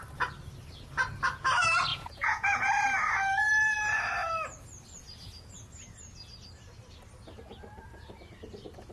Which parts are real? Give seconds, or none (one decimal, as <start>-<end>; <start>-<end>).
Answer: 0.0-1.9; 2.7-8.9